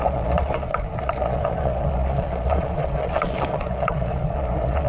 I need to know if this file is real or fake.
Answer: fake